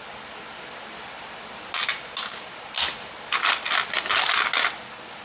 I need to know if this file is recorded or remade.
recorded